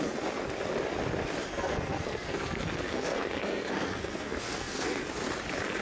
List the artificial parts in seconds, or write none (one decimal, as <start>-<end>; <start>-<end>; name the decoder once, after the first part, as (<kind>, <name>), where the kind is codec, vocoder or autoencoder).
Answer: 1.5-5.0 (codec, SNAC)